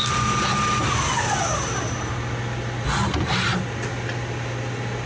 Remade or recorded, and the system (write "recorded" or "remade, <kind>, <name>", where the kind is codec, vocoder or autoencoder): recorded